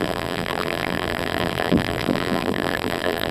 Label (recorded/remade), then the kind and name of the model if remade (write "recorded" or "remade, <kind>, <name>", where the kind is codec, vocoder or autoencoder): remade, vocoder, BigVGAN v2